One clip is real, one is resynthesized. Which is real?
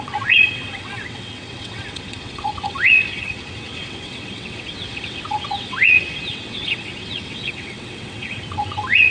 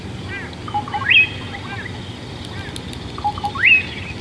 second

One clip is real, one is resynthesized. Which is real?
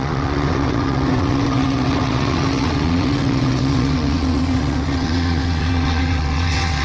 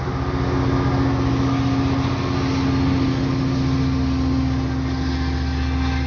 second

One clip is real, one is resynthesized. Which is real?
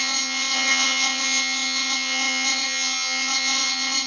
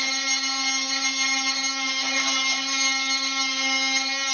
second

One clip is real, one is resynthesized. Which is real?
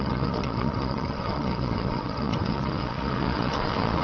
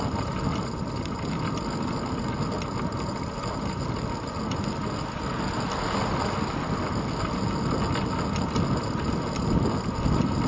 second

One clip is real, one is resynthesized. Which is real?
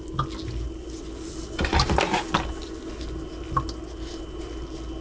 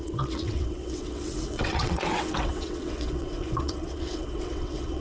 first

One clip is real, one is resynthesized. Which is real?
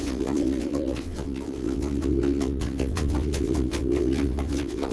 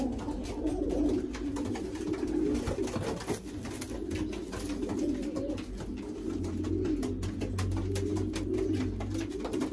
second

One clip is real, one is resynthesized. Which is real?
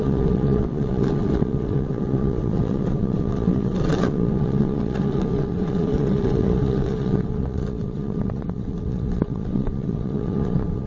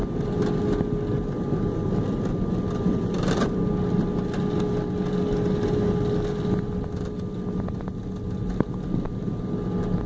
second